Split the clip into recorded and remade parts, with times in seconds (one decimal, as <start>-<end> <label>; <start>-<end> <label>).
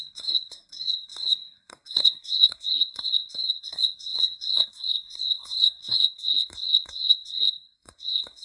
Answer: 0.0-8.4 remade